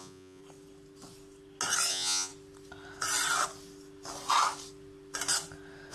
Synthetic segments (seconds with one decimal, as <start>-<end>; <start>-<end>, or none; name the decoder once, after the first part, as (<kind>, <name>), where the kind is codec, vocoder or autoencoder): 0.0-0.4 (vocoder, Vocos); 1.9-2.3